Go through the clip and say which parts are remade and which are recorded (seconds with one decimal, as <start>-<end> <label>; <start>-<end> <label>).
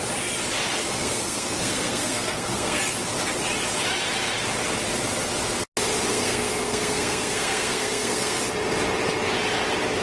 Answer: 0.0-0.8 recorded; 0.8-2.8 remade; 2.8-6.1 recorded; 6.1-8.4 remade; 8.4-10.0 recorded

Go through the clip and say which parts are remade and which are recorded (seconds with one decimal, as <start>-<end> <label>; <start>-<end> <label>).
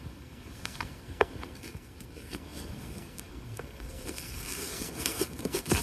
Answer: 0.0-5.8 remade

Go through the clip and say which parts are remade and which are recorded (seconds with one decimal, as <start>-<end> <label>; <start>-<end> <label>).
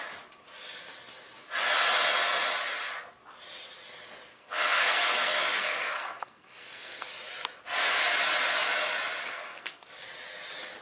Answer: 0.0-4.3 recorded; 4.3-7.1 remade; 7.1-9.2 recorded; 9.2-9.9 remade; 9.9-10.8 recorded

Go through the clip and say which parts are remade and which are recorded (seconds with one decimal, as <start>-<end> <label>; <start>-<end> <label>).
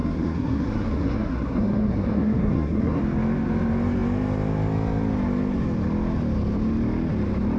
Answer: 0.0-3.0 remade; 3.0-7.6 recorded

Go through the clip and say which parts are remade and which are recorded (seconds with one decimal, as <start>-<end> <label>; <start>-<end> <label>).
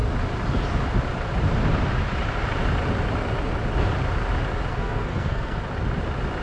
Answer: 0.0-4.7 recorded; 4.7-5.6 remade; 5.6-6.4 recorded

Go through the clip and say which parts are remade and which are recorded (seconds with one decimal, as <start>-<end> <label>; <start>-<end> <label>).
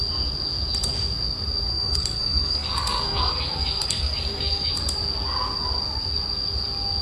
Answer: 0.0-1.7 recorded; 1.7-4.7 remade; 4.7-7.0 recorded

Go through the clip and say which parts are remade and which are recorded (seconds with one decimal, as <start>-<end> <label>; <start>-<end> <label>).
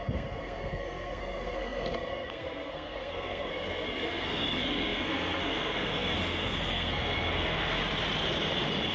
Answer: 0.0-7.8 remade; 7.8-8.9 recorded